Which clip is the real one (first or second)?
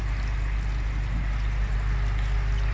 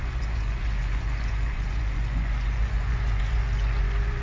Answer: first